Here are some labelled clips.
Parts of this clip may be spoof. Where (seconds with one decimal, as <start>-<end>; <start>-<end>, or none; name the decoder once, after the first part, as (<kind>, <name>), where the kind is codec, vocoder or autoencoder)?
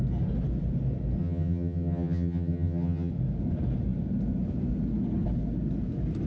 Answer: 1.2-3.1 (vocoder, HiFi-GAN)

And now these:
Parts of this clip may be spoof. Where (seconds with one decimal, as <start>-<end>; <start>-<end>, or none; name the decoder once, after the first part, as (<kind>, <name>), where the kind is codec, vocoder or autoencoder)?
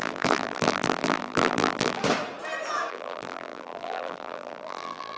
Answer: 0.0-2.0 (vocoder, BigVGAN v2); 2.9-5.2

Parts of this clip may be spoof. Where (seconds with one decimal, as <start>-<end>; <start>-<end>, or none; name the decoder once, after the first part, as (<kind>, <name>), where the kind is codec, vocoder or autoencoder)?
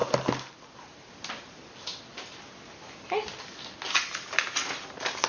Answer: none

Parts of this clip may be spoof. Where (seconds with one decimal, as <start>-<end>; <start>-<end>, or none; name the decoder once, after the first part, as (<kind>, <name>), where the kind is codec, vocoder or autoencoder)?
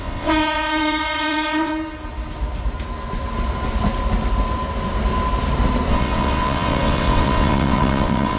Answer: 0.0-1.7 (vocoder, WaveNeXt); 5.9-8.4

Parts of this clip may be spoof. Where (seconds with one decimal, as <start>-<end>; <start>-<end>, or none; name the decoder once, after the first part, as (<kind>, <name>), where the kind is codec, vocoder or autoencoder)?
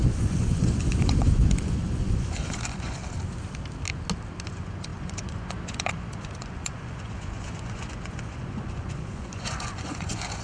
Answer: 0.0-3.0 (vocoder, Vocos); 4.5-10.4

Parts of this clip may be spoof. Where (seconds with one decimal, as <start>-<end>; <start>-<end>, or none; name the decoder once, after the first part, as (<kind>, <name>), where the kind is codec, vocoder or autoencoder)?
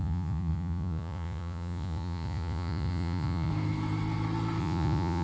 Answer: 0.0-3.5 (vocoder, Vocos); 4.6-5.2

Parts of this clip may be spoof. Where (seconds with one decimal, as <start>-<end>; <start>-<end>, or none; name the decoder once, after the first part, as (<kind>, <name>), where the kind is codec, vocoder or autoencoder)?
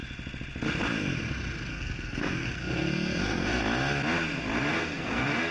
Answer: 1.7-3.6 (codec, SNAC); 4.7-5.5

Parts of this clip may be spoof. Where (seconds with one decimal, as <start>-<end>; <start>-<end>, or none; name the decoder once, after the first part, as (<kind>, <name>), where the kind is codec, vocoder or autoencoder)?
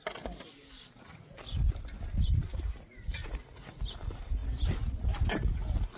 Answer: 2.5-3.8 (vocoder, Vocos)